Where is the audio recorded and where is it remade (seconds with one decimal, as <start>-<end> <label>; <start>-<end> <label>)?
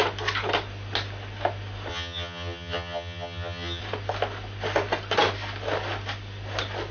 0.0-1.9 recorded; 1.9-3.8 remade; 3.8-6.9 recorded